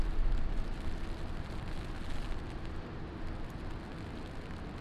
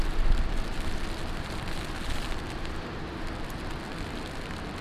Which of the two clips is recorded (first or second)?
first